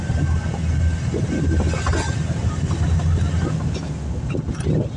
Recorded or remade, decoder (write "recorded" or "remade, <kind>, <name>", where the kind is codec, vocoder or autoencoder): recorded